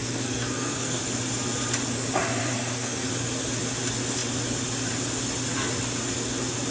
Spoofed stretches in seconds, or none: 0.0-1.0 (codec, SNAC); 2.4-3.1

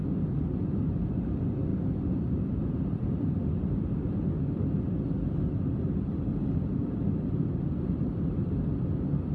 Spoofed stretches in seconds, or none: 1.7-3.4 (vocoder, BigVGAN v2)

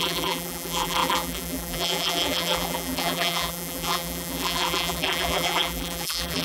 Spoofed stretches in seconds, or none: 0.0-6.4 (vocoder, BigVGAN v2)

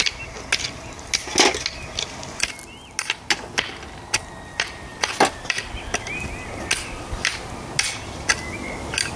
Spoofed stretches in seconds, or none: none

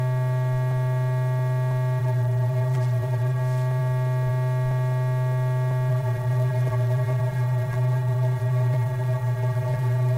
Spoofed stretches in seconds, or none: 2.0-3.4 (vocoder, BigVGAN v2); 5.9-10.2

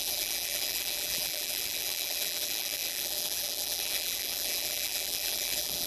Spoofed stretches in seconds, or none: 0.0-5.9 (vocoder, BigVGAN v2)

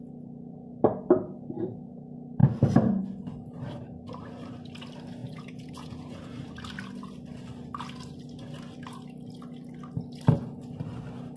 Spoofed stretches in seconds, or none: 5.2-6.2 (vocoder, Vocos)

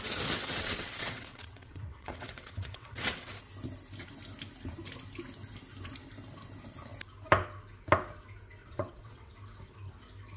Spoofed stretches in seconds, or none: 0.4-3.3 (vocoder, WaveNeXt); 8.6-9.3